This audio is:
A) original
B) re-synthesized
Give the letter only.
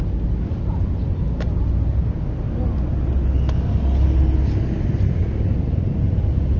A